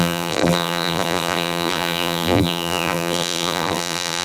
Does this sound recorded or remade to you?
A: remade